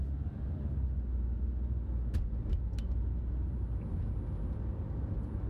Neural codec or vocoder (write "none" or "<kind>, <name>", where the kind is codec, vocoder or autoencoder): none